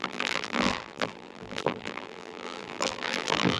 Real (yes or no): no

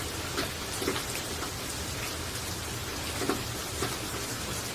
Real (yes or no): yes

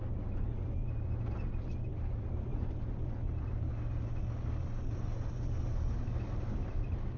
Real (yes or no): yes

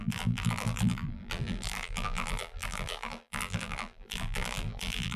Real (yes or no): no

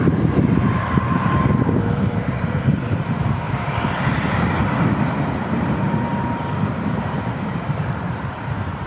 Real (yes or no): no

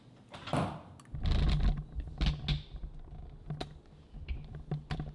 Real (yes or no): yes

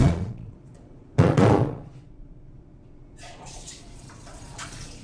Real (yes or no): no